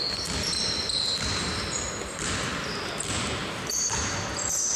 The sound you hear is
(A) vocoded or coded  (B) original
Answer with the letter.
B